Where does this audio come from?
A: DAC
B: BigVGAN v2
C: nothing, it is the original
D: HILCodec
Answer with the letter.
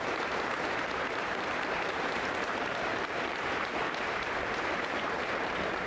B